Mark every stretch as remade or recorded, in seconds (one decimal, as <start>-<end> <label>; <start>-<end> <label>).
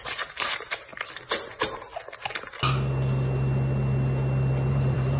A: 0.0-0.9 remade; 0.9-1.4 recorded; 1.4-1.9 remade; 1.9-4.7 recorded; 4.7-5.2 remade